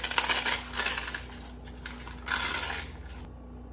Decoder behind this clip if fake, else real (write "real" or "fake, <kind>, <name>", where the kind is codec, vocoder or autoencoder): real